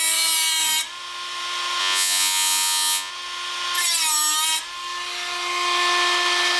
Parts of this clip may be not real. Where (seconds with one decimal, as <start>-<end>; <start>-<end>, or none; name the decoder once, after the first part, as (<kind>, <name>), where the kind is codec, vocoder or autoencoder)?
1.8-3.1 (vocoder, Vocos)